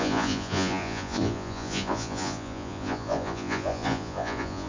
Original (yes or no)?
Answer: no